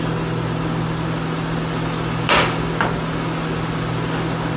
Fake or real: real